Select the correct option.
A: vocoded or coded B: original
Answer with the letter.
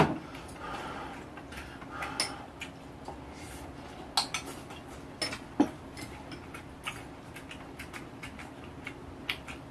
B